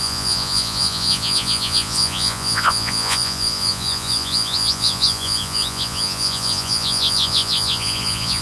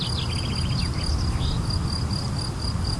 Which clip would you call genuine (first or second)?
second